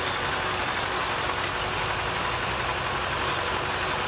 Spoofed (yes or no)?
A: no